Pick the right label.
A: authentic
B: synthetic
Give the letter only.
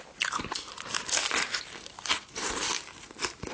B